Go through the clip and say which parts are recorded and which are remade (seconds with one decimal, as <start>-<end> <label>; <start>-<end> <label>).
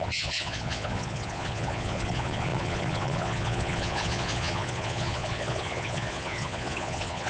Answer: 0.0-7.3 remade